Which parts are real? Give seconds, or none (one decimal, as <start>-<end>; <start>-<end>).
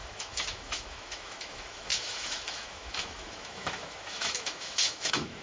none